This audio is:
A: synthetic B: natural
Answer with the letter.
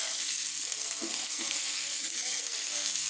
A